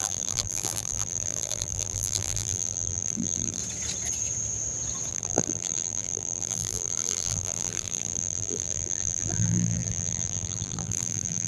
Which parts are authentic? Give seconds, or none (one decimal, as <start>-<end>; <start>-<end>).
3.6-5.1